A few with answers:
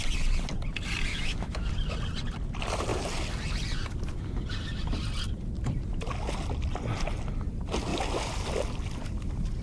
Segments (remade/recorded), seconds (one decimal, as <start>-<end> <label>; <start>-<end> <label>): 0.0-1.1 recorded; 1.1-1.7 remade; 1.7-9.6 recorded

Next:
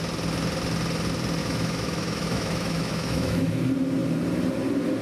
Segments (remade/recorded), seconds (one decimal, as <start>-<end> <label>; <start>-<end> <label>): 0.0-1.4 recorded; 1.4-3.6 remade; 3.6-5.0 recorded

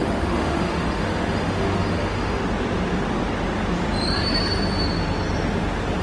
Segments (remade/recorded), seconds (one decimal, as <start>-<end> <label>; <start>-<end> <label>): 0.0-2.4 remade; 2.4-6.0 recorded